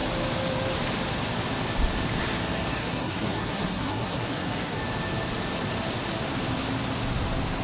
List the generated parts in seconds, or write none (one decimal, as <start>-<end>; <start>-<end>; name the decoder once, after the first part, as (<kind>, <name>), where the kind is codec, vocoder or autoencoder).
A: 2.7-4.8 (codec, SNAC)